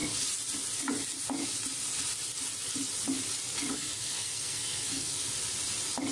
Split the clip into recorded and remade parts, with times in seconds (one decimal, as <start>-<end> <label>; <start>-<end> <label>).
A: 0.0-3.7 recorded; 3.7-5.3 remade; 5.3-6.1 recorded